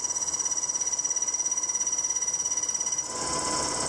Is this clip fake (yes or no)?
no